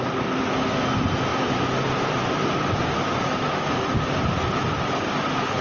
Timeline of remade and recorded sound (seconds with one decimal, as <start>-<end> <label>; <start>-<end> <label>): 0.0-1.3 recorded; 1.3-2.3 remade; 2.3-5.6 recorded